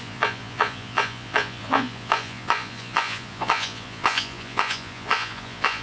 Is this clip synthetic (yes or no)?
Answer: yes